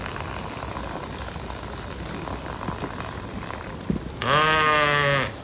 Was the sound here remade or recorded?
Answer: recorded